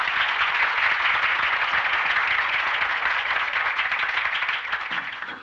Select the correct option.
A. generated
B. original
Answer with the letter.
A